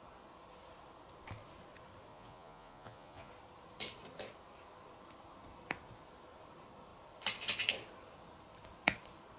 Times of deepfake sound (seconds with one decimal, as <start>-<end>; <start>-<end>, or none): 2.1-3.3